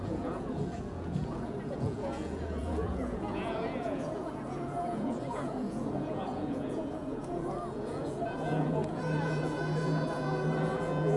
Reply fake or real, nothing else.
fake